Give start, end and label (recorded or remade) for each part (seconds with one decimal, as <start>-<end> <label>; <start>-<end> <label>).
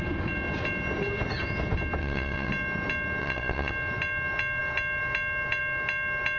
0.0-2.0 recorded; 2.0-2.5 remade; 2.5-3.2 recorded; 3.2-3.7 remade; 3.7-6.4 recorded